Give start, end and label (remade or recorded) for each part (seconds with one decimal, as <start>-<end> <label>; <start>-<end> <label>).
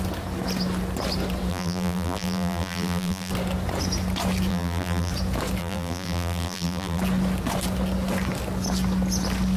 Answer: 0.0-1.5 recorded; 1.5-3.3 remade; 3.3-4.5 recorded; 4.5-5.1 remade; 5.1-5.6 recorded; 5.6-7.0 remade; 7.0-9.6 recorded